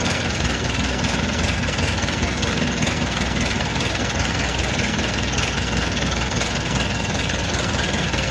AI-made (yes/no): yes